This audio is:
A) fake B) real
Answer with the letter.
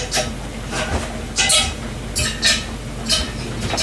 B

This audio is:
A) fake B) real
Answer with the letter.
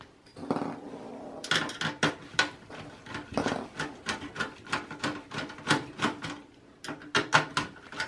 B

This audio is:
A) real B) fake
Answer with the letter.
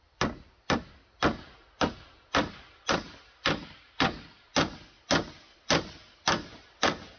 A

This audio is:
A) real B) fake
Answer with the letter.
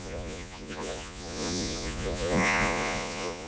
B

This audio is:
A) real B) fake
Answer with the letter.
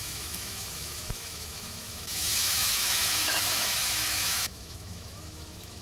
B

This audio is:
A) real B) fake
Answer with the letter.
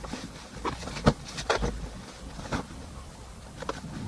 A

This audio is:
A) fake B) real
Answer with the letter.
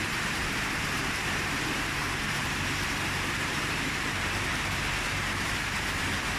A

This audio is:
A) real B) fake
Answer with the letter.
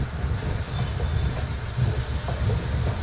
A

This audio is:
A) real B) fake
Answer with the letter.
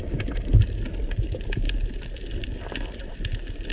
A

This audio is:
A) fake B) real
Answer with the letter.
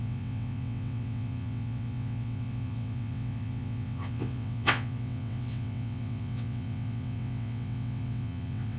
A